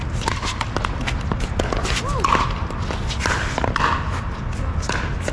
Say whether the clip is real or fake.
real